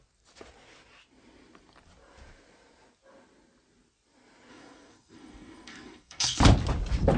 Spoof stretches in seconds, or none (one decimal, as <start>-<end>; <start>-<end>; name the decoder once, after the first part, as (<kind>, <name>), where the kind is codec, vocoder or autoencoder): 4.5-6.4 (codec, SNAC)